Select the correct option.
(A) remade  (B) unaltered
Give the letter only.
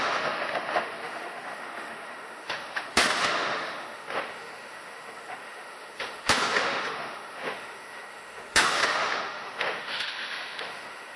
A